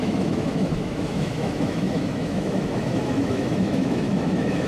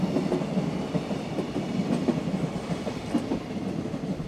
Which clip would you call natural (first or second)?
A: second